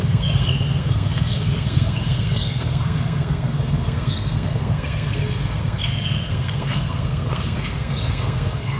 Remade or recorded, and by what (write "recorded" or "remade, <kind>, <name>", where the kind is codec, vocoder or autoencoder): remade, codec, SNAC